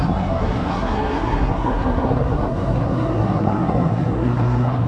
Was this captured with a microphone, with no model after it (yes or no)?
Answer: no